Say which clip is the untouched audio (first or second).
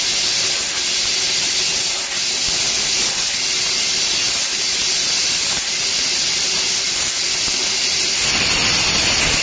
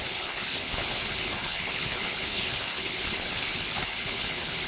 first